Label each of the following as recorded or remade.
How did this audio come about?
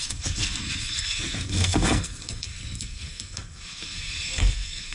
remade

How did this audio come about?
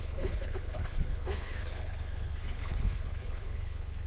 remade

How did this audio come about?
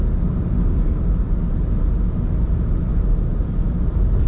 recorded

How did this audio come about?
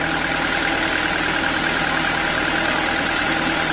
recorded